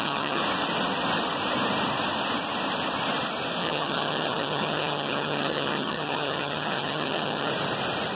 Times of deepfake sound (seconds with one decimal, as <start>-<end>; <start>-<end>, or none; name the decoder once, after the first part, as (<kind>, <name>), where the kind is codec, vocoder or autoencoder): 0.0-0.4 (vocoder, HiFi-GAN); 3.6-7.5